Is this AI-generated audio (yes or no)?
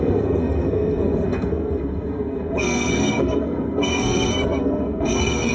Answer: yes